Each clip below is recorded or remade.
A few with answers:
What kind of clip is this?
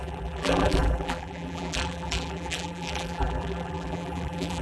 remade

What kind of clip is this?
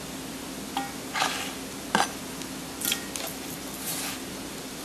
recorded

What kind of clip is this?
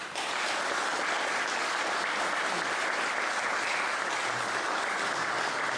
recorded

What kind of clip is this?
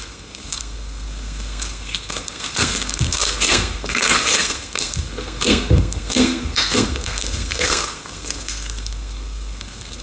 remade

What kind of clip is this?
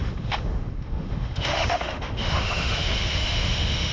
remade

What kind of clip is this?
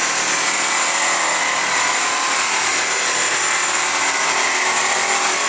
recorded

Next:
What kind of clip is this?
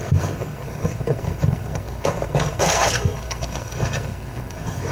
remade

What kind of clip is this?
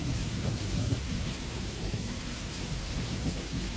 remade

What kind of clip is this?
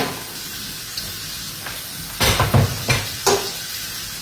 recorded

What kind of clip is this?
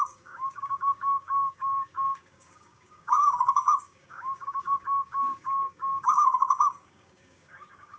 remade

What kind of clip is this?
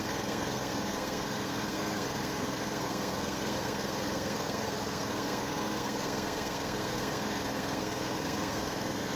remade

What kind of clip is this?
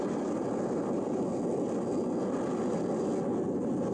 recorded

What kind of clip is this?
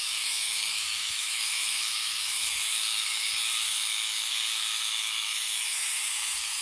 remade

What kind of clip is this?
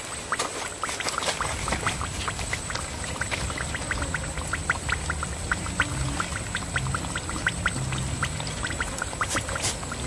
recorded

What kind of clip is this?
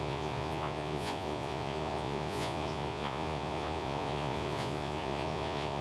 remade